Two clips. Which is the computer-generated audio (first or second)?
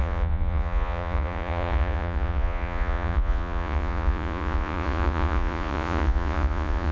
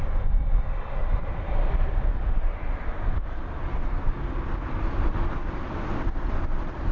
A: first